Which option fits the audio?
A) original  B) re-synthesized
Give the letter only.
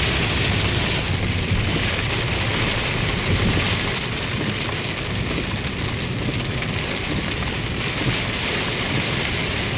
A